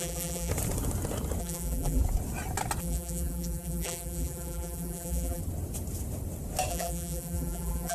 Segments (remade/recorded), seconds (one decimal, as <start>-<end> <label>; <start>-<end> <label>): 0.0-0.5 remade; 0.5-1.4 recorded; 1.4-2.0 remade; 2.0-2.8 recorded; 2.8-5.4 remade; 5.4-6.7 recorded; 6.7-7.9 remade